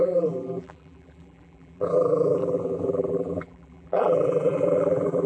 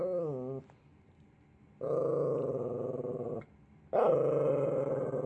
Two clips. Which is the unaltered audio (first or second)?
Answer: second